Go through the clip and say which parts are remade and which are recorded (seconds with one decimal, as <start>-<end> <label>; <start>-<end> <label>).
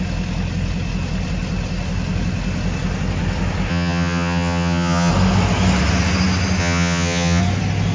0.0-3.7 recorded; 3.7-5.1 remade; 5.1-6.6 recorded; 6.6-7.4 remade; 7.4-7.9 recorded